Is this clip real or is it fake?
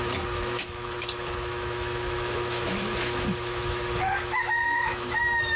fake